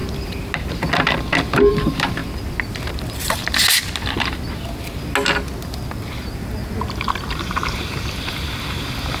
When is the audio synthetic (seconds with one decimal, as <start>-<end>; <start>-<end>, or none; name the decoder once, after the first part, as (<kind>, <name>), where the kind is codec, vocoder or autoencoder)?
1.7-2.2 (vocoder, BigVGAN v2); 7.3-9.2